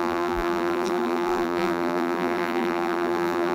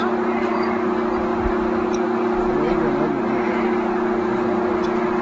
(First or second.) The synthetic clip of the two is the first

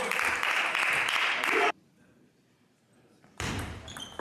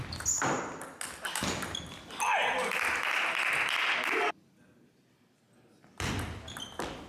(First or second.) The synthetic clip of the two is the first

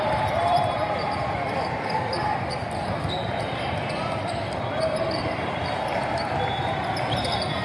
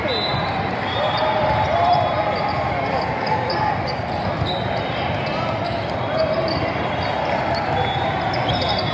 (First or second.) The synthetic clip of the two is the first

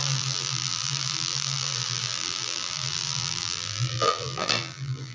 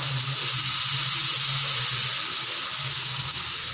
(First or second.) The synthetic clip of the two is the first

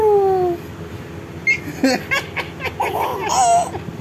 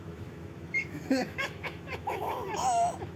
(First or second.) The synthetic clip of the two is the second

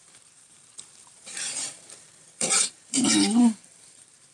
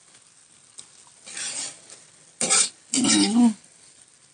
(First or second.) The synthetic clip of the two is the first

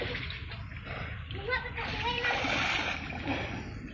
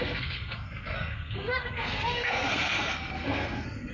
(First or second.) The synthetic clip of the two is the second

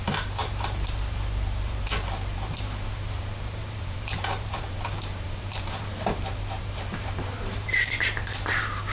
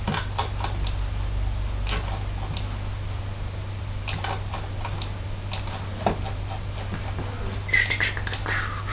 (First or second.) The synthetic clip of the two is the first